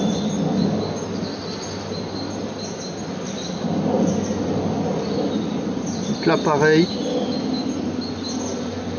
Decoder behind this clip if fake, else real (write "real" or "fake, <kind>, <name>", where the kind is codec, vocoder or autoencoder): real